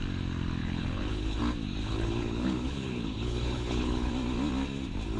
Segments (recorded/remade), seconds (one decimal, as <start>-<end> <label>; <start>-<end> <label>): 0.0-0.6 recorded; 0.6-1.4 remade; 1.4-1.8 recorded; 1.8-4.1 remade; 4.1-5.2 recorded